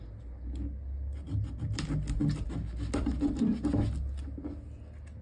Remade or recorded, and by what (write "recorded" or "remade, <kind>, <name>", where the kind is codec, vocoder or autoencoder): recorded